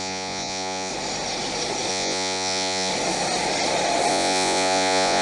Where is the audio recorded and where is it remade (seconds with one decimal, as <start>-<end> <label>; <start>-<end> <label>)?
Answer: 0.0-0.9 remade; 0.9-1.9 recorded; 1.9-2.9 remade; 2.9-4.1 recorded; 4.1-5.2 remade